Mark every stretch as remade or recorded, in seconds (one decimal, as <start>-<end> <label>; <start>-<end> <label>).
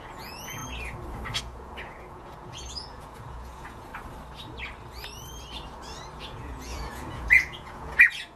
0.0-0.6 remade; 0.6-1.4 recorded; 1.4-3.9 remade; 3.9-6.2 recorded; 6.2-8.4 remade